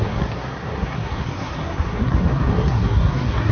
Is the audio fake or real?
fake